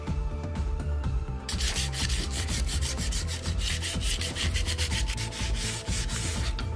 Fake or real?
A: fake